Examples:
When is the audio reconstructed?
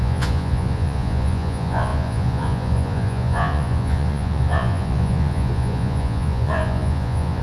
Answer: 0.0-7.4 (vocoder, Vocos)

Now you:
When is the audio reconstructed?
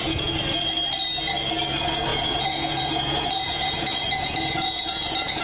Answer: 0.0-0.6 (vocoder, Vocos); 2.1-5.4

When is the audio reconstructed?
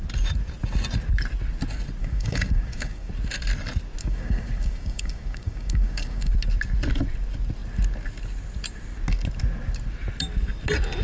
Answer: 2.0-3.1 (codec, DAC); 4.0-6.3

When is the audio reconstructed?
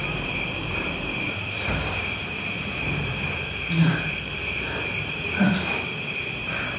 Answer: 0.0-6.8 (vocoder, BigVGAN v2)